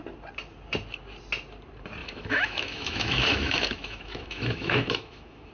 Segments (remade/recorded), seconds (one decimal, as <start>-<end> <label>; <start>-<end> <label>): 0.0-2.0 recorded; 2.0-5.5 remade